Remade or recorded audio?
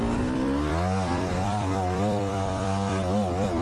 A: remade